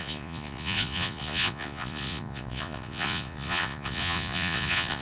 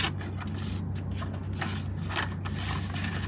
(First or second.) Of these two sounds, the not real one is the first